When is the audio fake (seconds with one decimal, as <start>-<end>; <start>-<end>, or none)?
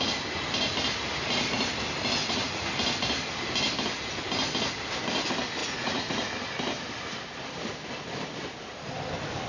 2.2-2.7; 5.6-6.3